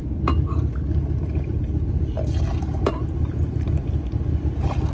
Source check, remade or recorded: recorded